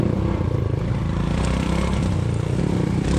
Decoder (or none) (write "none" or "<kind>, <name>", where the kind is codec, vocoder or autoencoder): vocoder, BigVGAN v2